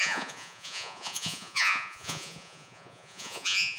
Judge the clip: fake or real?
fake